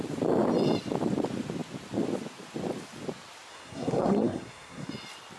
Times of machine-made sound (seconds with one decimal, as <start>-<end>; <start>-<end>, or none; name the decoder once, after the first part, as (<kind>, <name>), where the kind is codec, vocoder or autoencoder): 3.5-4.9 (codec, SNAC)

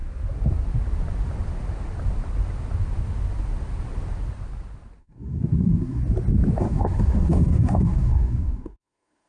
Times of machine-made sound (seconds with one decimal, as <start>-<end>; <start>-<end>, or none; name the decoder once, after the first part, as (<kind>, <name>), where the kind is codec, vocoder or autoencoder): 5.0-6.0 (codec, SNAC); 6.6-9.3